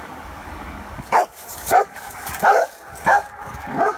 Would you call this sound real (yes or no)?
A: no